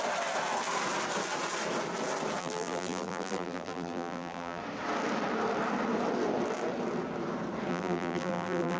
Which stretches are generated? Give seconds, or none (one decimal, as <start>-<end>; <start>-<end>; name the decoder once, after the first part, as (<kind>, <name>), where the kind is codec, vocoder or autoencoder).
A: 2.4-4.6 (vocoder, BigVGAN v2); 7.7-8.8